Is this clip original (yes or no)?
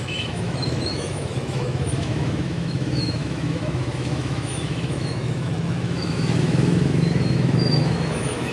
no